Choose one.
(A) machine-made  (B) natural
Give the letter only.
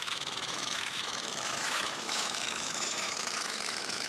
A